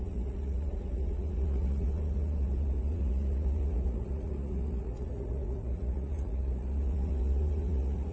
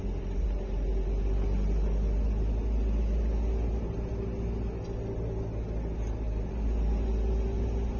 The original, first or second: second